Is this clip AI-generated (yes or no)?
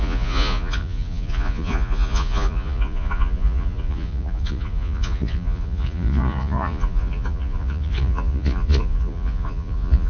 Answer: yes